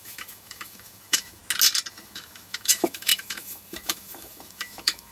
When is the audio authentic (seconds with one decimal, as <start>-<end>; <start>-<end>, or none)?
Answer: 1.4-1.9